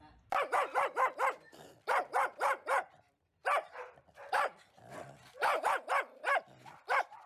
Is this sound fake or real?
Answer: fake